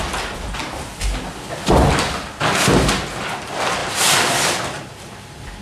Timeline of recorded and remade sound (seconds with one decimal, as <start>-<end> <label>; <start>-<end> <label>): 0.0-3.8 recorded; 3.8-5.6 remade